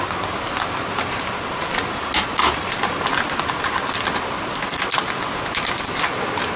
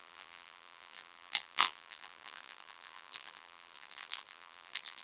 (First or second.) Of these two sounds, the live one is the first